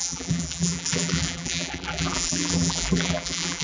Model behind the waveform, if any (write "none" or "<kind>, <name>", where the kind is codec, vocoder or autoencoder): vocoder, BigVGAN v2